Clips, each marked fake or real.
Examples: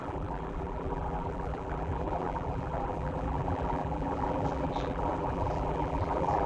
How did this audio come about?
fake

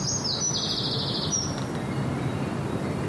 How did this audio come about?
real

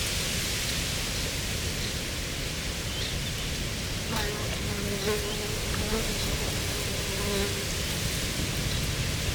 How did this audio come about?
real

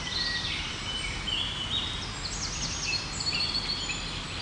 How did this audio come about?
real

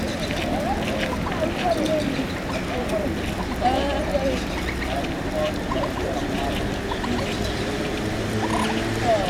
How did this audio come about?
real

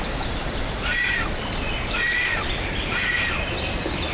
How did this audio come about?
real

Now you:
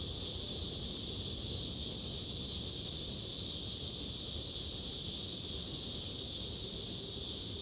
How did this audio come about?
real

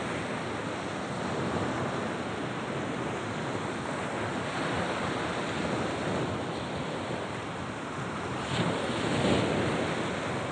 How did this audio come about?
real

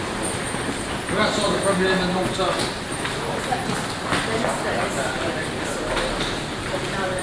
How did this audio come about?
real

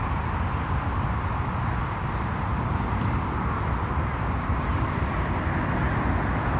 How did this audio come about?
real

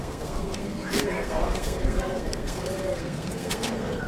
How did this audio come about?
fake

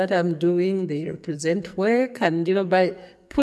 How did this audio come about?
fake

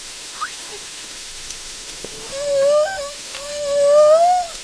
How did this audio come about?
fake